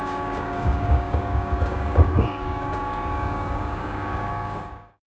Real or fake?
fake